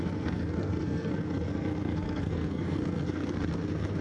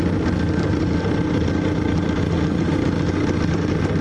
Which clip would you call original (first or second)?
second